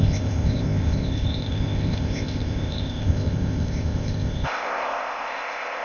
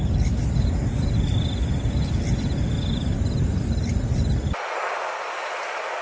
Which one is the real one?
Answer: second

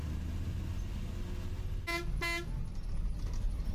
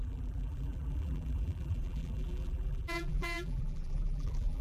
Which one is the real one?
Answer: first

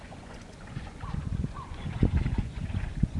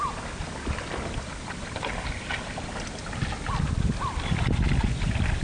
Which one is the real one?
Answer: second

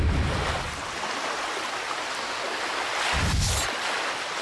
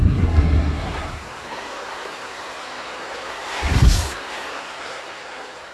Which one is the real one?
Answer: first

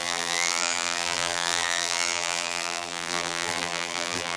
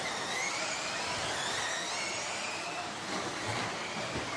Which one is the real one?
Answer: second